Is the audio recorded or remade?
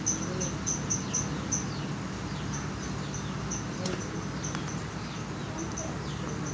recorded